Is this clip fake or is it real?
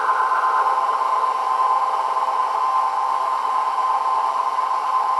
real